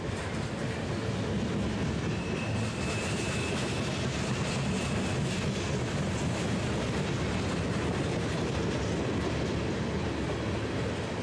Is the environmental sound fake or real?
real